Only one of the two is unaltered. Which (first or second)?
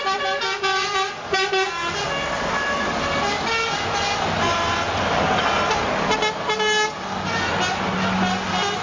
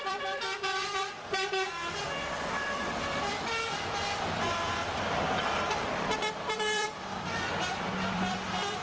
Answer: first